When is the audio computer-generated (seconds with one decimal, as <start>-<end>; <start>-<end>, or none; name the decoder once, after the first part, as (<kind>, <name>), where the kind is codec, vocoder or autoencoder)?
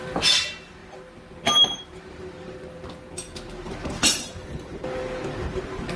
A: none